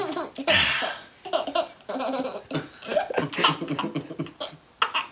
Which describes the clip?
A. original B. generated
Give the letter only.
A